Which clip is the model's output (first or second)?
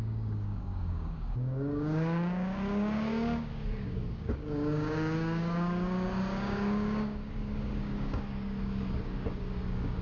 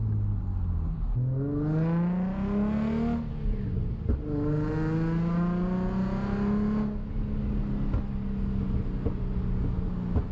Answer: first